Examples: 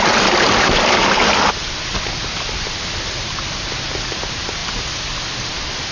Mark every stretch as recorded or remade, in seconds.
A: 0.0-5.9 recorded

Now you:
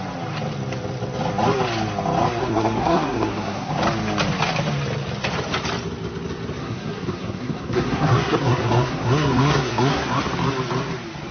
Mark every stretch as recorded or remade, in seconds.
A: 0.0-2.4 recorded; 2.4-3.7 remade; 3.7-6.6 recorded; 6.6-10.2 remade; 10.2-11.3 recorded

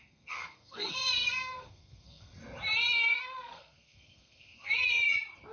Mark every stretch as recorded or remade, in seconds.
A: 0.0-2.3 remade; 2.3-3.1 recorded; 3.1-4.7 remade; 4.7-5.5 recorded